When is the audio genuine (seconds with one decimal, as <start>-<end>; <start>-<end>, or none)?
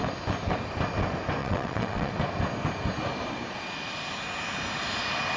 0.0-1.4; 2.1-5.4